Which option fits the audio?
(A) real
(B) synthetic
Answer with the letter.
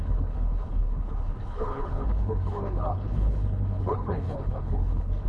B